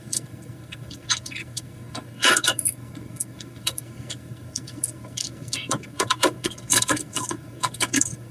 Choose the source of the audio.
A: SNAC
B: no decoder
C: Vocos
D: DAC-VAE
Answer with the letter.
A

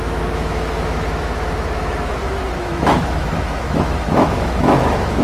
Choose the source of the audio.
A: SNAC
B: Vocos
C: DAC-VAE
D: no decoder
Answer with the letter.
C